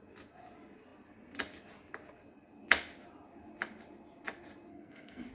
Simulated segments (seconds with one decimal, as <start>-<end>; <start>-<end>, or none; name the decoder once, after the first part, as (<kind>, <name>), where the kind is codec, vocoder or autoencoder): 4.7-5.3 (codec, SNAC)